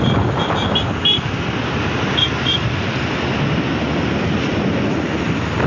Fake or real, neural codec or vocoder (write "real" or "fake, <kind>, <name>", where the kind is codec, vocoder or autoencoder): real